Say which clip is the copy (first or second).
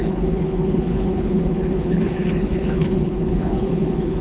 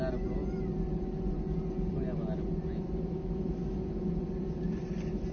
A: first